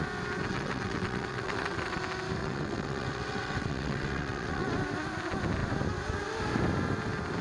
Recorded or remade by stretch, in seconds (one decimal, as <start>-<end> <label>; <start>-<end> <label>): 0.0-0.5 recorded; 0.5-2.0 remade; 2.0-2.4 recorded; 2.4-4.7 remade; 4.7-7.4 recorded